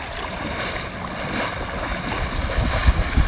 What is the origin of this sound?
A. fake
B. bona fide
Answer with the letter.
B